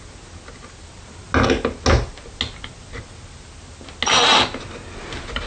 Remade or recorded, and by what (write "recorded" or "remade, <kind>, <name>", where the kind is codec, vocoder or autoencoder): recorded